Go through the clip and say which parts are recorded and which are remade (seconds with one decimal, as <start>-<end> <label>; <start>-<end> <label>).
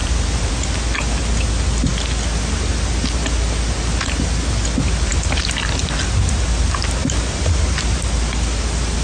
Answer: 0.0-0.5 remade; 0.5-7.0 recorded; 7.0-8.0 remade; 8.0-9.0 recorded